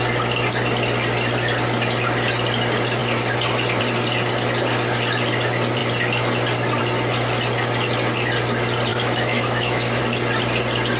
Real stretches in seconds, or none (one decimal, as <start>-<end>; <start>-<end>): 0.0-8.9; 10.0-11.0